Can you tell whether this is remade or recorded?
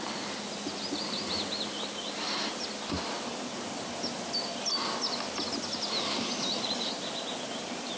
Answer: recorded